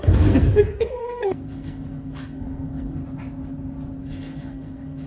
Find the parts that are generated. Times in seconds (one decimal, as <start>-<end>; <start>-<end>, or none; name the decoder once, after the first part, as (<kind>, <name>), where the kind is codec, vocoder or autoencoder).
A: 0.0-3.0 (codec, SNAC); 4.0-5.1